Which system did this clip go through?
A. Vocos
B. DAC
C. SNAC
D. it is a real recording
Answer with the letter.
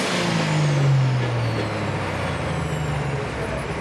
D